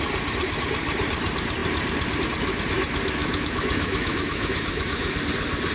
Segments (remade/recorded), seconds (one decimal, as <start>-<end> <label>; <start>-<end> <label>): 0.0-3.2 recorded; 3.2-5.1 remade; 5.1-5.7 recorded